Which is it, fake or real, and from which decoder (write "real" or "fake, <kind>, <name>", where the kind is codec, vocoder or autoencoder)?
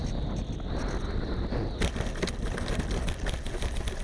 real